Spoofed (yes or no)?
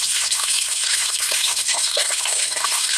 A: yes